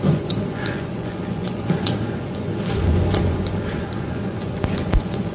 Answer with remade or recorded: remade